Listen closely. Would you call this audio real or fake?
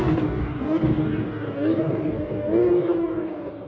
fake